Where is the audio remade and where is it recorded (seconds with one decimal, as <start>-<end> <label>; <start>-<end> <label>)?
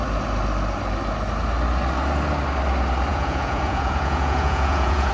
0.0-3.1 recorded; 3.1-5.1 remade